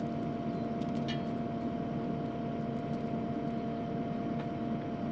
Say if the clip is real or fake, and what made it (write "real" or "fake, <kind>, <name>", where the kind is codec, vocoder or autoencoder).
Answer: real